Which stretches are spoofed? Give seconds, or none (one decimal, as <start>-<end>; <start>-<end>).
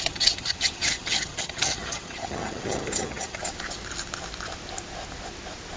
0.0-3.4